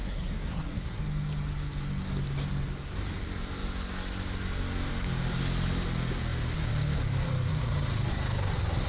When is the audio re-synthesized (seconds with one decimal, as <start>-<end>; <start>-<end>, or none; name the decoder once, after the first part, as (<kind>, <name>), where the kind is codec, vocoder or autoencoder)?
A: 0.0-1.0 (codec, SNAC)